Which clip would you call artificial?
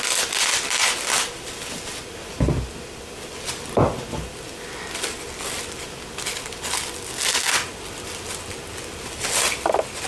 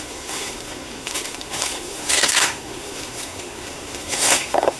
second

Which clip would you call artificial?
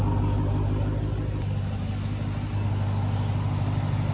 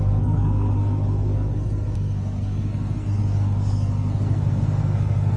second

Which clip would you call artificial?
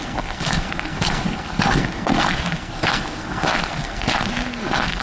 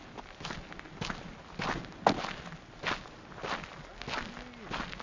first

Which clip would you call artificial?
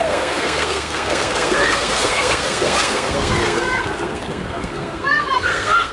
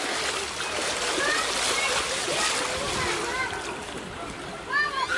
first